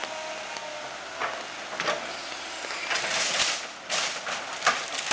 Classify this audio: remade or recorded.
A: recorded